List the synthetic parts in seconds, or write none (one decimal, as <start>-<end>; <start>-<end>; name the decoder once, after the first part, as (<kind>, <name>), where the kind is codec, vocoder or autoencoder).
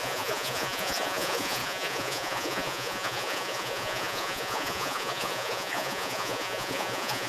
0.0-7.3 (vocoder, Vocos)